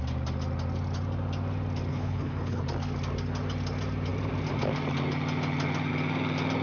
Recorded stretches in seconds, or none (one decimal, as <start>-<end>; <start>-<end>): 0.0-1.9; 2.6-6.6